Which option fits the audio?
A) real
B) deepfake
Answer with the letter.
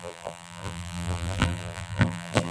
B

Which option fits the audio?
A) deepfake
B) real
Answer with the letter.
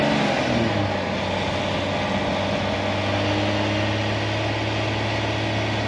B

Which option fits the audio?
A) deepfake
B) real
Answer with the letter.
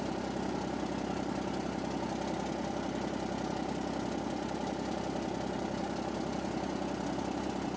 B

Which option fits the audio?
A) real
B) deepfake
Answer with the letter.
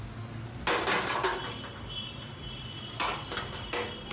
A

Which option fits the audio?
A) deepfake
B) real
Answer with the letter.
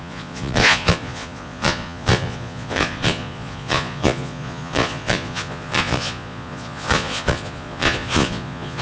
A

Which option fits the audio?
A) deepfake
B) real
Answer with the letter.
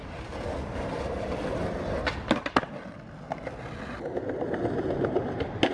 B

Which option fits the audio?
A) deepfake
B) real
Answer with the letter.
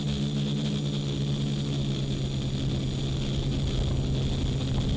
B